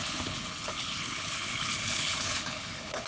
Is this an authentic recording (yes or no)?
no